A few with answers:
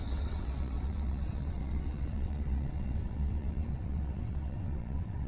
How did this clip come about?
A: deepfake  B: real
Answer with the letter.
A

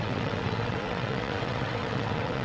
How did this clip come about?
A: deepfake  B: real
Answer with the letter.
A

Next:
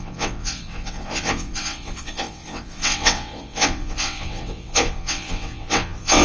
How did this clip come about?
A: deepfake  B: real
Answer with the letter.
A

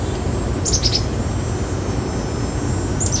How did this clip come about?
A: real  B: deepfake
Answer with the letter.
A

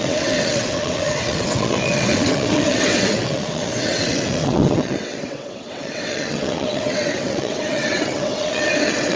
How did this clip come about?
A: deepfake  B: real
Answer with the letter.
A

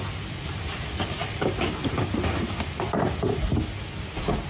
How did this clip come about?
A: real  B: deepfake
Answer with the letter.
A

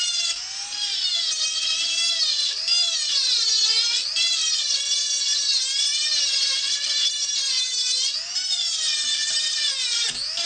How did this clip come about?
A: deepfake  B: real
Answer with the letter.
B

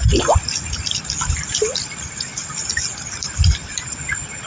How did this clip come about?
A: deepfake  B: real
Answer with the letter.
B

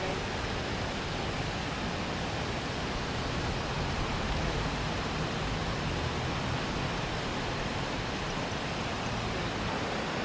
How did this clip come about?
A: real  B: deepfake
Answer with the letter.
A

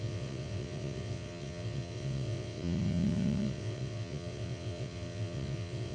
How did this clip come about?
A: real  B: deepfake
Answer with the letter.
B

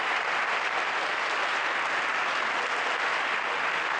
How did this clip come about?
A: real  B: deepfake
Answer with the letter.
A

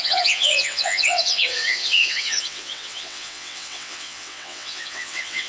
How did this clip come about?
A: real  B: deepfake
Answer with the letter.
B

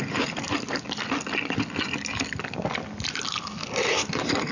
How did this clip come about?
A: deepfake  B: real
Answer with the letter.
B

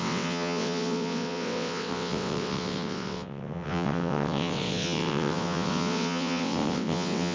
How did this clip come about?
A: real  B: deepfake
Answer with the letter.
B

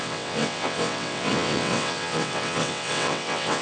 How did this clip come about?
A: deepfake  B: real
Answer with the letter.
A